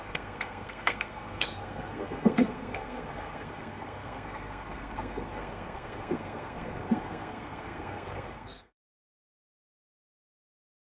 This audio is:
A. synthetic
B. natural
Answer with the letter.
A